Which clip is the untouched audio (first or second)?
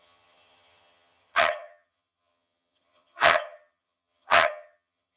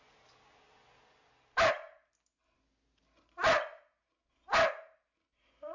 second